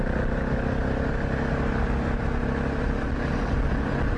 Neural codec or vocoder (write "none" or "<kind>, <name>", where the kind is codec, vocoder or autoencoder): none